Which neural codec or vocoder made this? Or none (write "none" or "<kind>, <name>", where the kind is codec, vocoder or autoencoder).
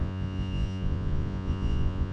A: vocoder, Vocos